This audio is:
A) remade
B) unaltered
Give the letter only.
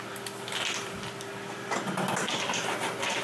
B